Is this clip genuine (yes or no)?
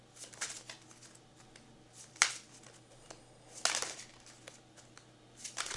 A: yes